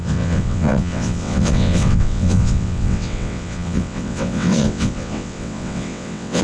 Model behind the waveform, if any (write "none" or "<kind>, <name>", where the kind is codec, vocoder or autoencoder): vocoder, WaveNeXt